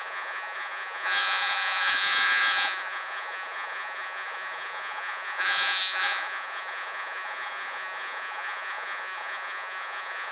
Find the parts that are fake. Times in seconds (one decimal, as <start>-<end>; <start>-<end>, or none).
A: 0.0-10.3